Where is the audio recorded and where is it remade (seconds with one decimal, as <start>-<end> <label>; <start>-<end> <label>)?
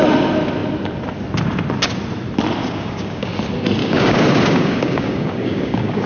0.0-2.6 recorded; 2.6-3.3 remade; 3.3-3.8 recorded; 3.8-6.1 remade